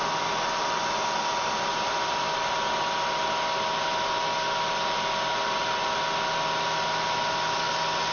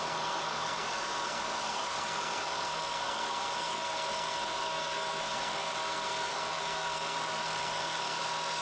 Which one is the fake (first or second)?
second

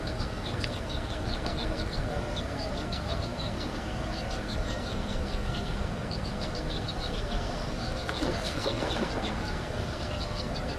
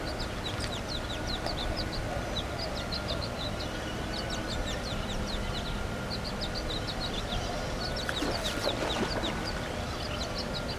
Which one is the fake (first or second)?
first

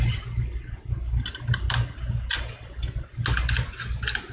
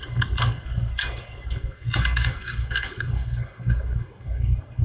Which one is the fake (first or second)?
second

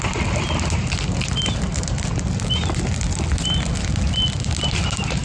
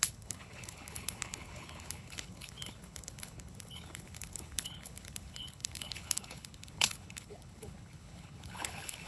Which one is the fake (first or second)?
second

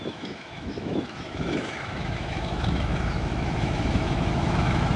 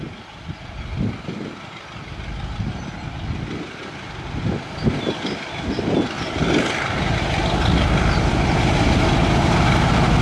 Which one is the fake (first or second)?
first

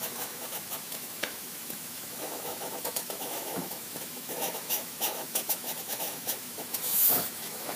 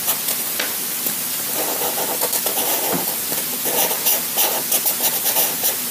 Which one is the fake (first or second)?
first